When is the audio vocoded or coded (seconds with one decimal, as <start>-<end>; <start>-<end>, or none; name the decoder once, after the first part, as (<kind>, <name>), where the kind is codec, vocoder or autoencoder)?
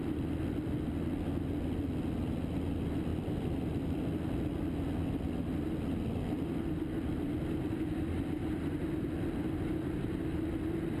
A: none